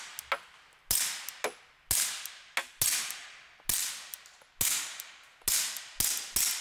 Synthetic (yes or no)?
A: no